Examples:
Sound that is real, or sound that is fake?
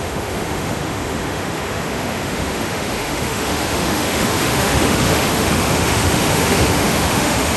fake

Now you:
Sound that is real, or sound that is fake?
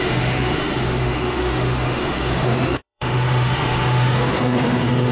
fake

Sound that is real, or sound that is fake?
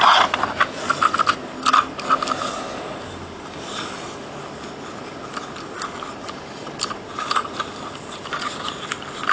real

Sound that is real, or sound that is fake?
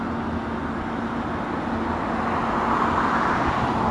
real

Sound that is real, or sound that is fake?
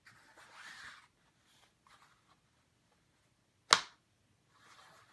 real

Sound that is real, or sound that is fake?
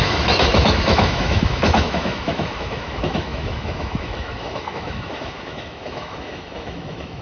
fake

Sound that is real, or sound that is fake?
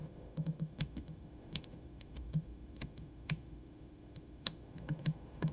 fake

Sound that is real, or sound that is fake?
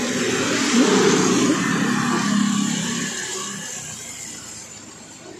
real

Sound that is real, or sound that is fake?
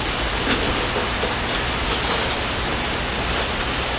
real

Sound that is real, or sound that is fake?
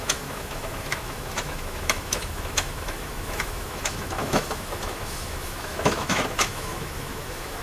fake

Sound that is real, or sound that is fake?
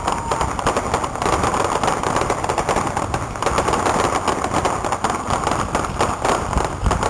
real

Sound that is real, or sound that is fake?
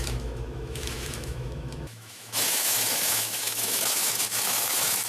fake